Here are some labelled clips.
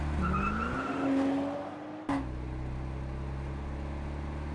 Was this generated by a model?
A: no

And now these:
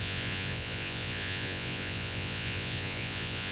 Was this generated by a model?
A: yes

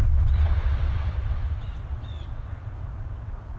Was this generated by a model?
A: yes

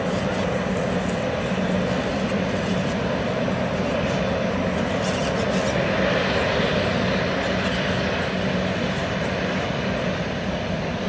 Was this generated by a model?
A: no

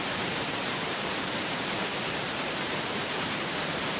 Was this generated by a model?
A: yes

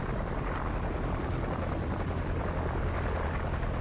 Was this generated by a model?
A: no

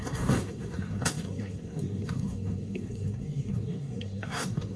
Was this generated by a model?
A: yes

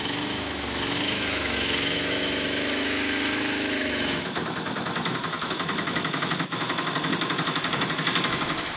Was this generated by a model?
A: yes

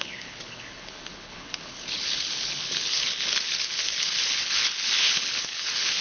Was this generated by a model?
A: yes